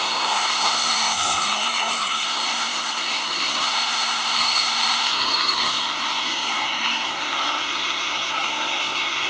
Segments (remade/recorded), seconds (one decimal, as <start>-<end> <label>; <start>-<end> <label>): 0.0-9.3 remade